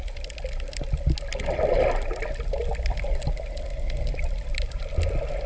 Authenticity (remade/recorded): recorded